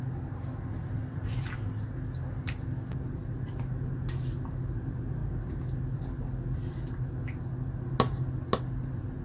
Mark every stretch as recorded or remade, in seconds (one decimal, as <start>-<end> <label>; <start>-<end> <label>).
0.0-9.2 recorded